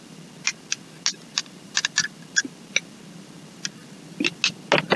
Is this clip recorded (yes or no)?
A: yes